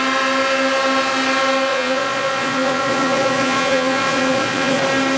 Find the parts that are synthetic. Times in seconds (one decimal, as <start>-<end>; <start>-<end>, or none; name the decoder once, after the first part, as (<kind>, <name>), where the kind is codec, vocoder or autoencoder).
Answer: 1.7-4.8 (vocoder, Vocos)